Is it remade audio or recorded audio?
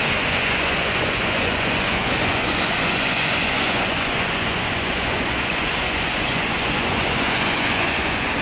remade